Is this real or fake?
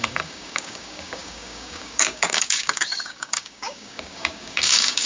fake